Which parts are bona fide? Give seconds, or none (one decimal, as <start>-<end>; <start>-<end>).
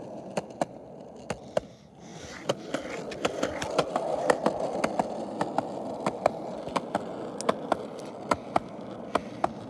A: 0.0-9.7